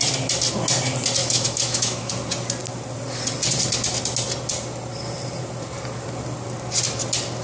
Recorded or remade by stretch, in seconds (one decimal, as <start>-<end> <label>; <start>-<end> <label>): 0.0-1.2 recorded; 1.2-2.1 remade; 2.1-7.4 recorded